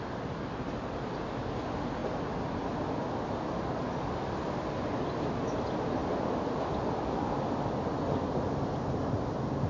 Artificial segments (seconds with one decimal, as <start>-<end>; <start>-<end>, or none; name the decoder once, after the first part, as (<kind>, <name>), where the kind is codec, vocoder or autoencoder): none